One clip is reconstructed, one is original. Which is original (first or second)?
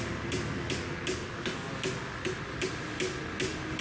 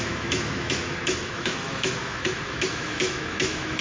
first